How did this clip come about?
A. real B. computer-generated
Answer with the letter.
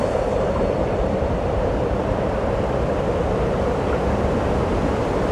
B